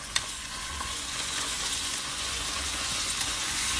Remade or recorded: remade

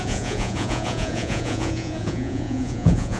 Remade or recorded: remade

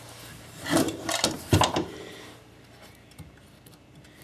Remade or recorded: recorded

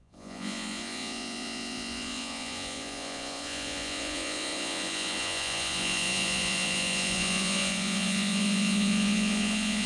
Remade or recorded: remade